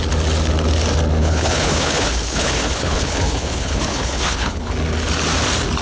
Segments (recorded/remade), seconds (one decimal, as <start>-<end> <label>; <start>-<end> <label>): 0.0-1.2 recorded; 1.2-4.7 remade; 4.7-5.8 recorded